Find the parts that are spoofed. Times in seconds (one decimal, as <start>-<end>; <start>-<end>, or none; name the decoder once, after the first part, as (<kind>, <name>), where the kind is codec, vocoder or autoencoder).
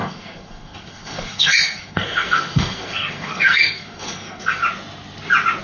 0.0-4.6 (codec, SNAC)